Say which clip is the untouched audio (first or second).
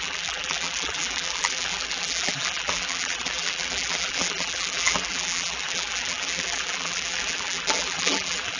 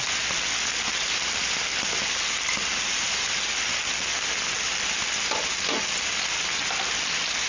second